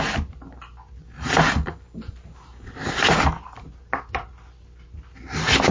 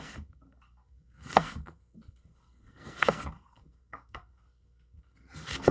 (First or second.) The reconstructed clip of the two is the second